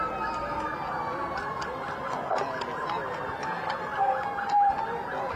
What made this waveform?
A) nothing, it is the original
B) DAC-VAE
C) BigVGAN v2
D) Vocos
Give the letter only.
A